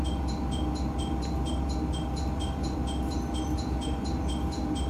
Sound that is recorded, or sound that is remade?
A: recorded